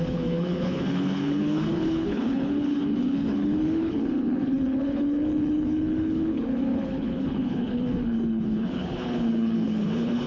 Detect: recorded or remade remade